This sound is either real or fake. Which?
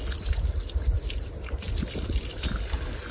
real